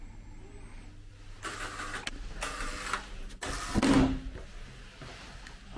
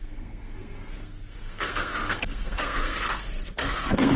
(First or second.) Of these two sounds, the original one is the first